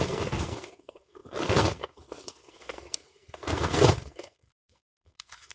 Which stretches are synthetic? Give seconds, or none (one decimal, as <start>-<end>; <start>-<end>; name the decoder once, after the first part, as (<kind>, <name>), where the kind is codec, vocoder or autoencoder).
0.0-5.5 (codec, SNAC)